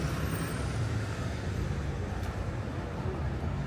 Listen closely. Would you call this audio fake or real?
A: real